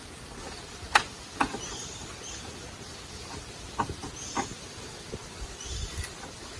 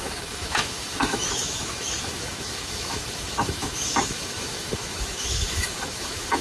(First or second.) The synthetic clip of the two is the second